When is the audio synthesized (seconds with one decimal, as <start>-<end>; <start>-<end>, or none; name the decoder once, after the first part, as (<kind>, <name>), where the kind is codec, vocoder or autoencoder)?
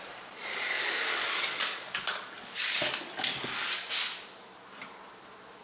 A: 0.5-3.9 (codec, DAC)